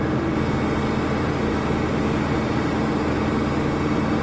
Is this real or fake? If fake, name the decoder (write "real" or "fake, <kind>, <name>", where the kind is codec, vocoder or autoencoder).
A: real